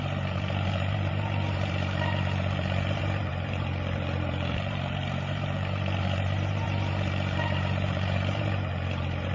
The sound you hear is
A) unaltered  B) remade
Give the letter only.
B